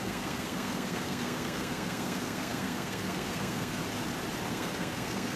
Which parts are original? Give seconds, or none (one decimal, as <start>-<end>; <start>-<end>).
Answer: 3.8-4.5